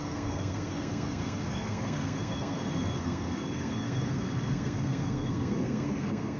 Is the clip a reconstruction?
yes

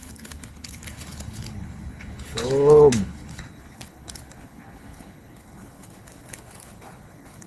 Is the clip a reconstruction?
yes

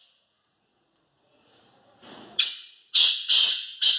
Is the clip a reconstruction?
yes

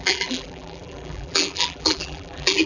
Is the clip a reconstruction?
yes